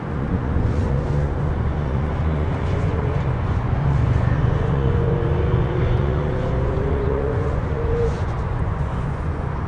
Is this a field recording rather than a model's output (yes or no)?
no